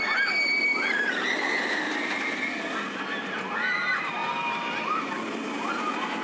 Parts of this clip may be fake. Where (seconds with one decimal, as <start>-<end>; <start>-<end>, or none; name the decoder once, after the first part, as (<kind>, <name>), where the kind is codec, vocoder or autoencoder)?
0.7-2.4 (vocoder, BigVGAN v2)